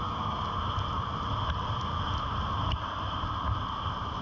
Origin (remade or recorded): recorded